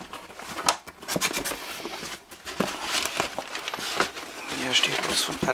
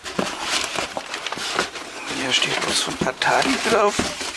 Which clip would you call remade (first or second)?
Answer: second